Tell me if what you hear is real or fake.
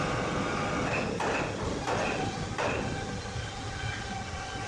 real